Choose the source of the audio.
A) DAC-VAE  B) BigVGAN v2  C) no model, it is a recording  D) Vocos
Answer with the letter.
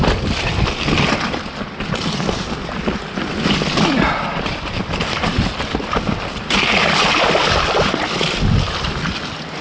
C